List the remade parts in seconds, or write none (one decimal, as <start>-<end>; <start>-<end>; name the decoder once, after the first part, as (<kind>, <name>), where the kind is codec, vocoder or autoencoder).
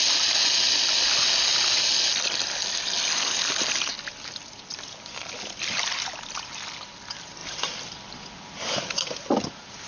none